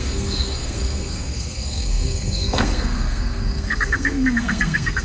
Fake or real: fake